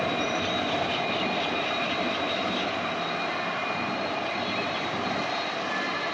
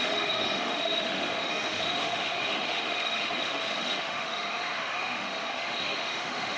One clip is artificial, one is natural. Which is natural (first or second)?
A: first